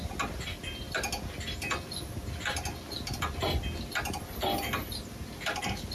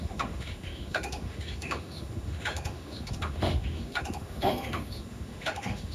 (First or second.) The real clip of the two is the first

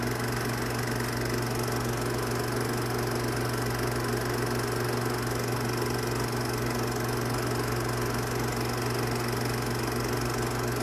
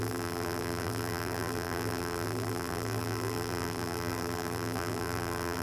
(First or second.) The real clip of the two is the first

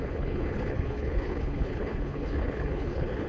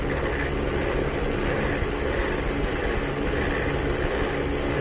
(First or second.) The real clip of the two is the second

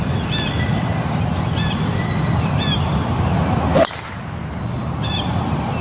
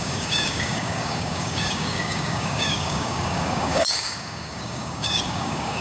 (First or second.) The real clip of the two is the first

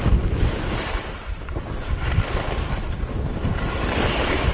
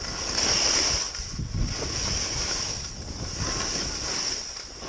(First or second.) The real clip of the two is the second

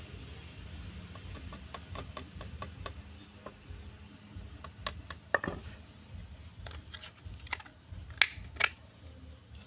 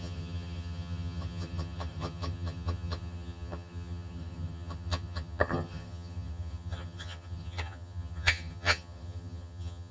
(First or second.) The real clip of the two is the first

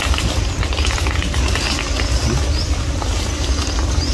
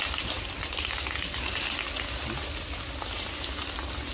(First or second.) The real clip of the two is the second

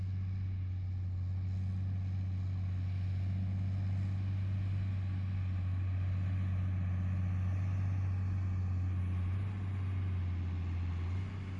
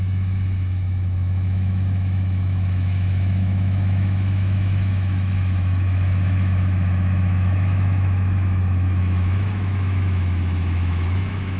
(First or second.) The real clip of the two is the first